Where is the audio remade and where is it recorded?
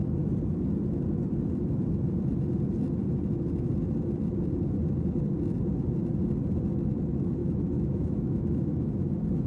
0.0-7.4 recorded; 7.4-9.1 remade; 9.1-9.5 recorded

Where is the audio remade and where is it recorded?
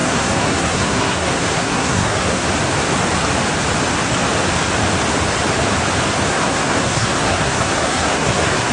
0.0-2.5 remade; 2.5-6.3 recorded; 6.3-8.7 remade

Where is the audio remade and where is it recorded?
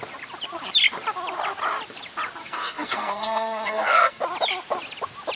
0.0-2.4 recorded; 2.4-4.2 remade; 4.2-5.4 recorded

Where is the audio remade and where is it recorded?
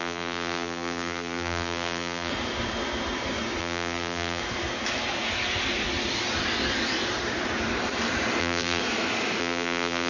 0.0-2.3 remade; 2.3-3.6 recorded; 3.6-4.4 remade; 4.4-8.4 recorded; 8.4-8.8 remade; 8.8-9.4 recorded; 9.4-10.1 remade